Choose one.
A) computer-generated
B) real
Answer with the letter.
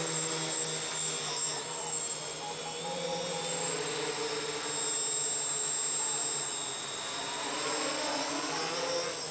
B